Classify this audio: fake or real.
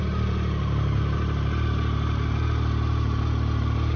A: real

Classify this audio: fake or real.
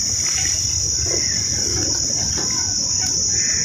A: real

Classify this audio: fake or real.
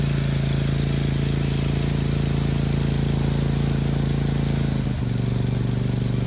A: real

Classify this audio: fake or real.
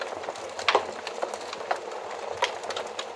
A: real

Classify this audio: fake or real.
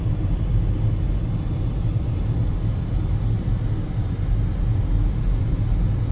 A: real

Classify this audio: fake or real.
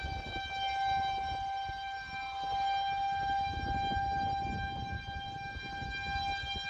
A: real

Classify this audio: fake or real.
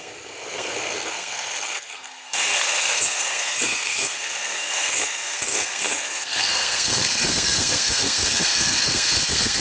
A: fake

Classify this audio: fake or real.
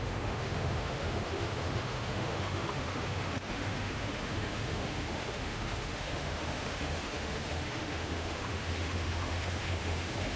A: fake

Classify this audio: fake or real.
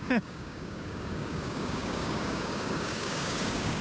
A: fake